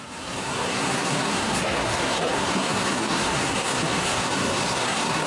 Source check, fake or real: fake